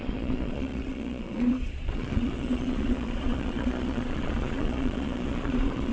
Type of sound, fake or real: fake